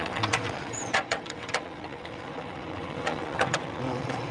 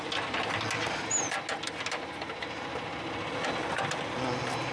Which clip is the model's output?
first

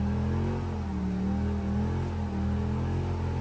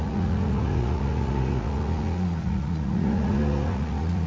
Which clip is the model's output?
second